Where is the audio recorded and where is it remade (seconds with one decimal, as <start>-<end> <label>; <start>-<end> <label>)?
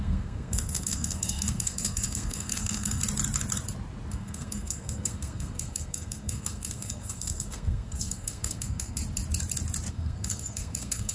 0.0-3.0 remade; 3.0-4.1 recorded; 4.1-9.0 remade; 9.0-9.9 recorded; 9.9-11.1 remade